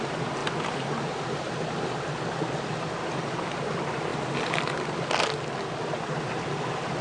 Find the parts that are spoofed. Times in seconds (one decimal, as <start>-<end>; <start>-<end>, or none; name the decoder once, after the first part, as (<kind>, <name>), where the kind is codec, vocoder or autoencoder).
none